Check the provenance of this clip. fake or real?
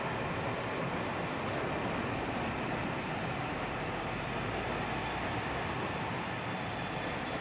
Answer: real